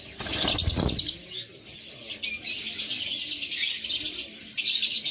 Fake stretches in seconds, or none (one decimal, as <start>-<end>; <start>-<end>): 0.6-1.1